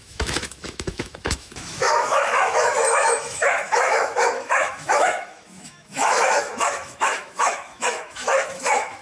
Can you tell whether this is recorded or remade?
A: remade